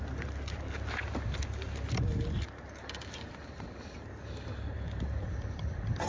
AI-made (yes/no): no